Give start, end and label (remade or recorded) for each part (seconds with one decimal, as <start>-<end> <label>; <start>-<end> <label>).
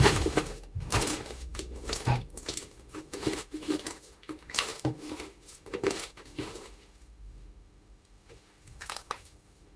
0.0-9.8 remade